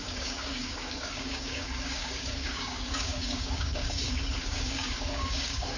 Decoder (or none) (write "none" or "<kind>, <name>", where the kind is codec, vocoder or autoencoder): codec, DAC